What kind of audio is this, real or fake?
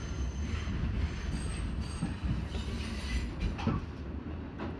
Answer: real